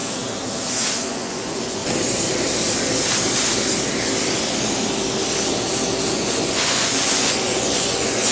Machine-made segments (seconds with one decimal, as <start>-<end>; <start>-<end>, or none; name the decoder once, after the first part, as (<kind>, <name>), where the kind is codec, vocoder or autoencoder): 0.9-1.8 (vocoder, Vocos); 6.1-8.3